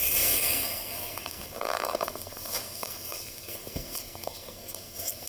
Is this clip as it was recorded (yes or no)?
no